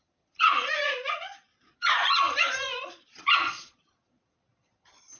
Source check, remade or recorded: remade